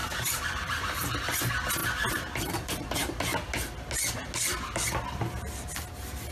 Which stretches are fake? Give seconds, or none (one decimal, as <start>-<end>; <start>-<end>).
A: 0.0-1.0; 1.8-2.7